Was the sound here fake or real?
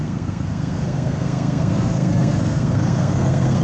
fake